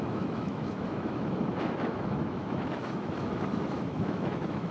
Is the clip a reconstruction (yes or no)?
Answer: yes